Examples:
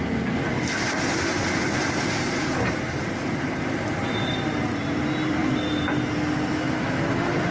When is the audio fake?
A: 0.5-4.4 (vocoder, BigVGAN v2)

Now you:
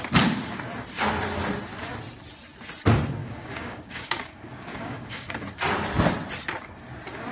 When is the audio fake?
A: 3.2-5.3 (codec, DAC)

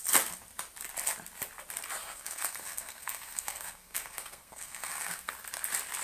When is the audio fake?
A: 2.0-5.3 (codec, SNAC)

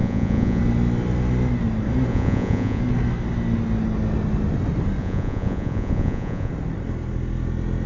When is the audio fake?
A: 0.0-0.6 (vocoder, Vocos); 2.1-2.8; 5.0-6.5

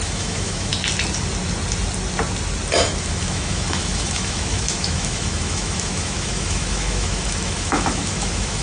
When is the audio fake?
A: 0.0-0.7 (autoencoder, DAC-VAE); 3.0-8.6

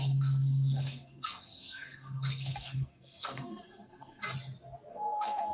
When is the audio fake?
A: 0.0-4.2 (codec, SNAC); 4.9-5.5

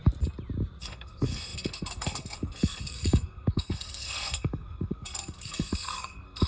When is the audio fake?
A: 0.8-6.5 (codec, SNAC)

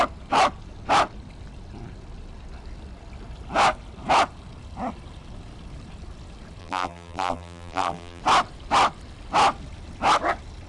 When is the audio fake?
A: 6.6-8.2 (vocoder, BigVGAN v2)